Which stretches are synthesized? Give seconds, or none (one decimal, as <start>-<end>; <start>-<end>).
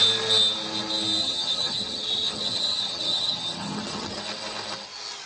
1.2-4.2